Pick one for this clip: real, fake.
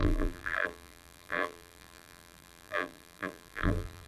fake